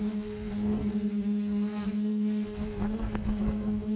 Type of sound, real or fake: fake